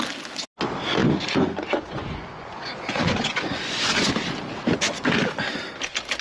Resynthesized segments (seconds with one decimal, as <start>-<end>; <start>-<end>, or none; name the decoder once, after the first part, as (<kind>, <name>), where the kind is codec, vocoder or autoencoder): 1.0-4.1 (vocoder, Vocos)